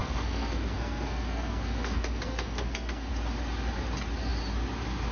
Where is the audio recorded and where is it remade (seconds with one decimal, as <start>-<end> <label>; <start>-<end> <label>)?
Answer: 0.0-3.1 remade; 3.1-5.1 recorded